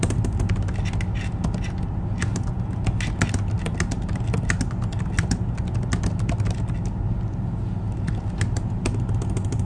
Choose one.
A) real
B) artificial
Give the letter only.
A